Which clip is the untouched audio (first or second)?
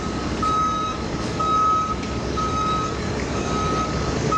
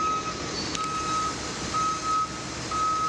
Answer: second